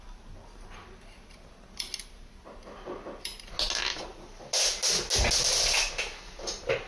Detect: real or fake real